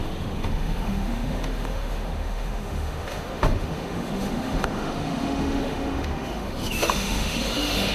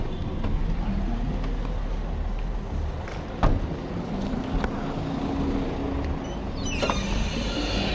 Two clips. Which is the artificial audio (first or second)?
first